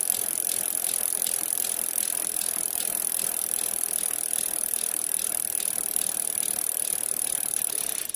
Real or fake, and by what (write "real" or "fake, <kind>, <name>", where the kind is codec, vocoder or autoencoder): real